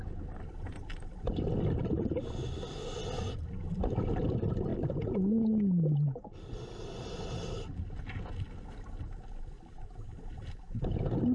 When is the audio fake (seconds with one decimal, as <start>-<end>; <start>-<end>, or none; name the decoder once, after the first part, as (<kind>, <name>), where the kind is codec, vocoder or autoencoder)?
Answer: 0.9-1.8 (vocoder, BigVGAN v2); 3.4-4.0; 10.3-10.9